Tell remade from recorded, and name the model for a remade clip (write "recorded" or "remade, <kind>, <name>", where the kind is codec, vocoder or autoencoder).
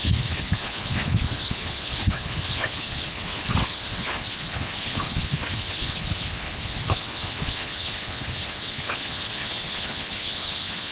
remade, codec, HILCodec